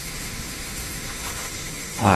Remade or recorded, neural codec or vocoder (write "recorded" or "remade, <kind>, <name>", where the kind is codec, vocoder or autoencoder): remade, autoencoder, DAC-VAE